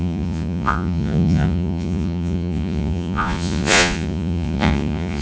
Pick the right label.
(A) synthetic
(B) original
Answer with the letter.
A